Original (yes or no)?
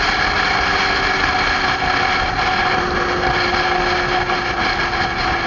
yes